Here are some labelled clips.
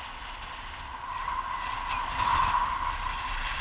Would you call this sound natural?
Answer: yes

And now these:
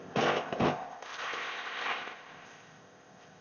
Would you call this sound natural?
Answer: no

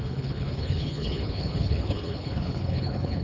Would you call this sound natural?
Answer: no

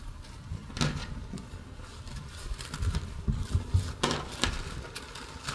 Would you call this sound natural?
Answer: yes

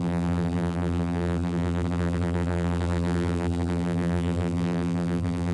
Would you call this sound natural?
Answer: no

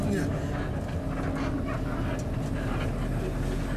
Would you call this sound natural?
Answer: yes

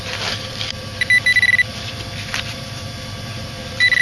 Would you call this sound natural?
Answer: no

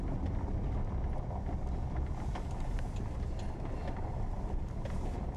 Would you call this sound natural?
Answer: yes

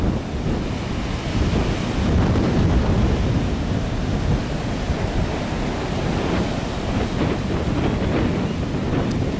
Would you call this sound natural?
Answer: yes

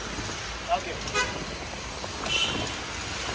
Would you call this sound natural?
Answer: yes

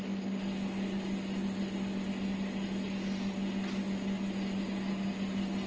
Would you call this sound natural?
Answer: yes